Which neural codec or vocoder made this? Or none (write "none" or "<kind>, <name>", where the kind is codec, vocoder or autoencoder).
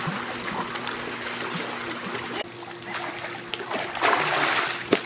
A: none